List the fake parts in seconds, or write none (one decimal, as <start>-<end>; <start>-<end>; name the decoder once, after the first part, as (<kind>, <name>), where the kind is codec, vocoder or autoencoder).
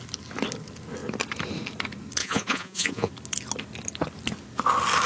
2.2-3.1 (vocoder, Vocos)